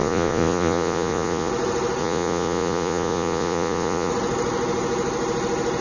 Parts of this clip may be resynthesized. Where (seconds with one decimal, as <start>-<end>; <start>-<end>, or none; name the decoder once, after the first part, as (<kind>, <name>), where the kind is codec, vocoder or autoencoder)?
0.0-1.5 (vocoder, Vocos); 2.0-4.1